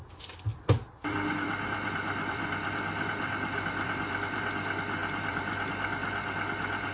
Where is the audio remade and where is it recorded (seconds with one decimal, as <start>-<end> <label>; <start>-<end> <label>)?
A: 0.0-0.5 recorded; 0.5-4.5 remade; 4.5-5.0 recorded; 5.0-5.7 remade; 5.7-6.9 recorded